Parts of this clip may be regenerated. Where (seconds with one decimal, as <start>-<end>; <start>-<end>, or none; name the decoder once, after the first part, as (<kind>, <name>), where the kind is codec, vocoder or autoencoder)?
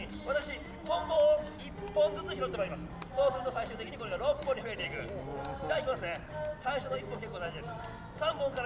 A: none